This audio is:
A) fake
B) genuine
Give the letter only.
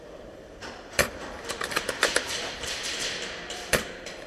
A